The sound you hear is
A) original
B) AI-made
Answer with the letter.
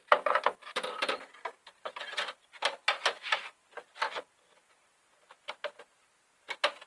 A